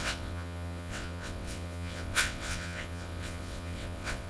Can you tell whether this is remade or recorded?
remade